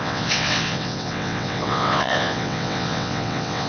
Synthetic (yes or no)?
yes